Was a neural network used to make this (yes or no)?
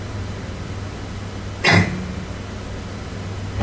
no